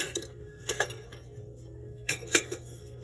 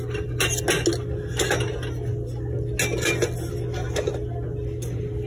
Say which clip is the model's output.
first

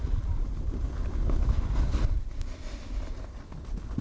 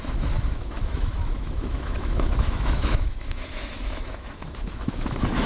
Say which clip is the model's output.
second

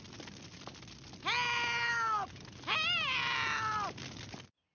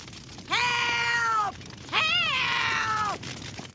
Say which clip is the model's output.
second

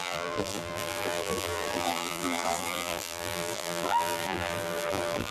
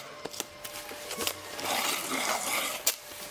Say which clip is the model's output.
first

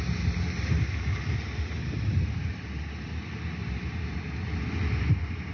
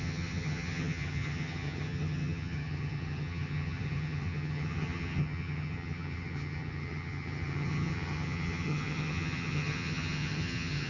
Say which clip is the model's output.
second